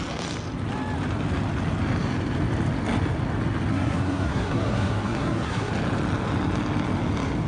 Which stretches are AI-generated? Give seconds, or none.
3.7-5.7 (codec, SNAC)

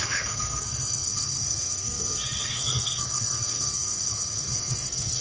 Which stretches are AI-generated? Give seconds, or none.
0.0-5.2 (codec, SNAC)

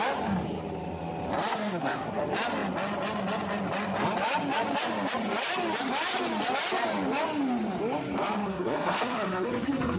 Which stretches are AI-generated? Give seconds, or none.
1.5-2.2 (codec, SNAC); 8.4-10.0

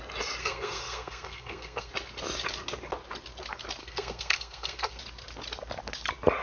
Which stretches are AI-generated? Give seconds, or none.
0.4-1.9 (codec, SNAC); 3.8-5.0

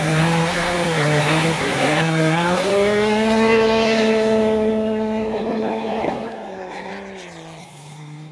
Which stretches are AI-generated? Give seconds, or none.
0.0-6.9 (codec, SNAC); 7.6-8.3